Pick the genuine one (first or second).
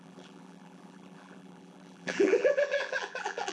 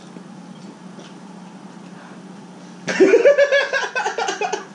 second